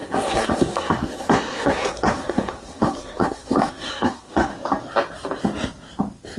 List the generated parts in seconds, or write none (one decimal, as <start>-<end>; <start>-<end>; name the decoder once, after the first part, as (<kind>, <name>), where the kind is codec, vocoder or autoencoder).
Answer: 0.0-4.5 (codec, SNAC)

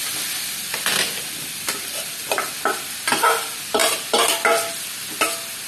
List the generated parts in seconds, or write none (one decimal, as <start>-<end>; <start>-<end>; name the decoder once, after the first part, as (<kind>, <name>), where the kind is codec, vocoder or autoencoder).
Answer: none